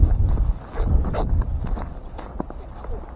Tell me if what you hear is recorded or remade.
recorded